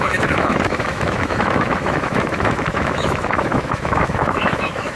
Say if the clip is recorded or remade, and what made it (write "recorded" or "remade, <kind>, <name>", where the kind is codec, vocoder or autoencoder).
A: remade, autoencoder, DAC-VAE